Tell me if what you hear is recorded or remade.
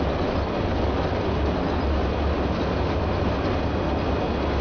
recorded